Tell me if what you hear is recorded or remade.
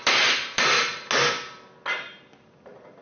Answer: recorded